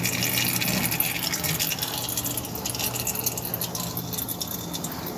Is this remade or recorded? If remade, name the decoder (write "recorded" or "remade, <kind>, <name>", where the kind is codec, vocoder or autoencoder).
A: recorded